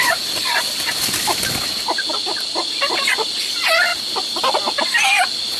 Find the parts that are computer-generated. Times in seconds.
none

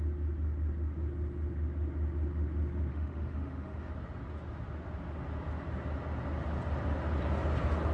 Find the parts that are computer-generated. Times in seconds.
2.9-3.9 (autoencoder, DAC-VAE)

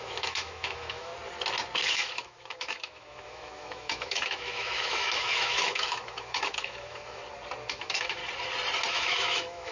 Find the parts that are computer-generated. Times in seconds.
0.0-1.1 (autoencoder, DAC-VAE); 1.9-7.2; 7.7-8.2; 8.9-9.7

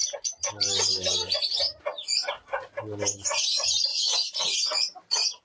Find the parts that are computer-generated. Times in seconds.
none

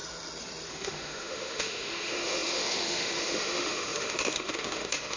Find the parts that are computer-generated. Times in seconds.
0.7-5.2 (autoencoder, DAC-VAE)

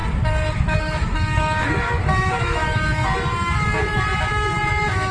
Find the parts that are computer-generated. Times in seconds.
0.5-3.0 (autoencoder, DAC-VAE); 4.6-5.1